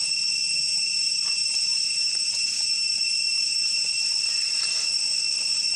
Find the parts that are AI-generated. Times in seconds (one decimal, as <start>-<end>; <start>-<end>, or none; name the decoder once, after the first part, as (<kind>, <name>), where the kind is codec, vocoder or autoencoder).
0.4-3.9 (vocoder, BigVGAN v2)